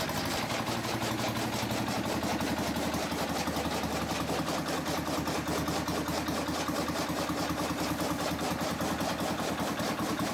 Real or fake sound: real